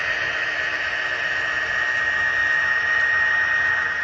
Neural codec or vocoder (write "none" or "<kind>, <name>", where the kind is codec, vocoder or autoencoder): none